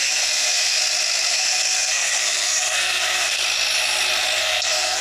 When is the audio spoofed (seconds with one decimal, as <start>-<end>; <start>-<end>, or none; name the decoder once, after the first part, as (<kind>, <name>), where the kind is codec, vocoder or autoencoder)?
0.0-0.8 (codec, SNAC); 1.3-3.4; 4.4-5.0